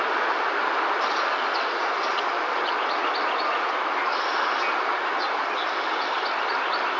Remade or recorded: recorded